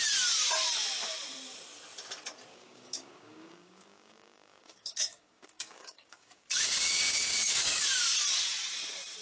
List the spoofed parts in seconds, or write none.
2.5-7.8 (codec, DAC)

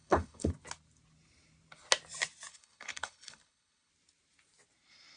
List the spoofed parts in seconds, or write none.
0.0-0.5 (codec, HILCodec); 2.5-3.9

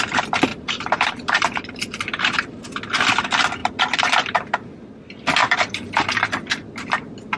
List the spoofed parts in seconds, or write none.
0.5-2.6 (vocoder, BigVGAN v2); 3.6-4.7; 5.4-6.3

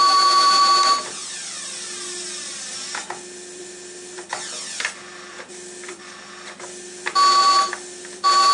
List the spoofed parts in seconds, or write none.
none